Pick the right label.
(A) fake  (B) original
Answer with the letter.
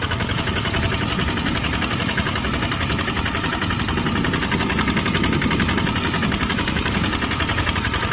B